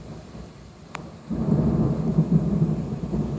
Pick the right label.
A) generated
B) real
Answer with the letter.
B